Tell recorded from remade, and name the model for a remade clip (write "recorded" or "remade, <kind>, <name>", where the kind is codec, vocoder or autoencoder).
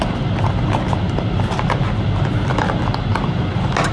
recorded